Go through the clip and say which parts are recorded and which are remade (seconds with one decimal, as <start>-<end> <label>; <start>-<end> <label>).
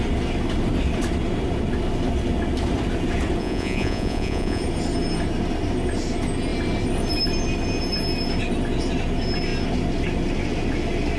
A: 0.0-3.4 recorded; 3.4-4.6 remade; 4.6-11.2 recorded